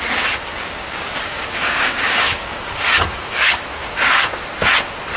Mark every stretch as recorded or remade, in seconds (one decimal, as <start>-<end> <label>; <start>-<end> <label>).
0.0-0.5 recorded; 0.5-3.6 remade; 3.6-5.2 recorded